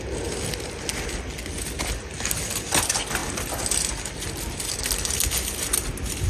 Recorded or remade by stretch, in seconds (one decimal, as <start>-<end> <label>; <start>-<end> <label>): 0.0-6.3 recorded